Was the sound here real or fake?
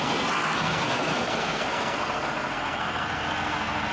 fake